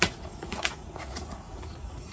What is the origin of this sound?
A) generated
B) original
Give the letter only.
A